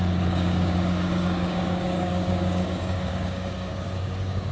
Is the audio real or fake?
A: fake